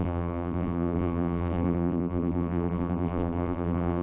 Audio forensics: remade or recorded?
remade